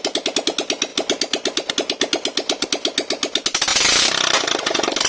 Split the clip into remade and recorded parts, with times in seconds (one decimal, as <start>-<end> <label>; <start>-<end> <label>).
0.0-5.1 recorded